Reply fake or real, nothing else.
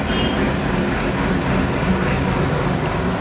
real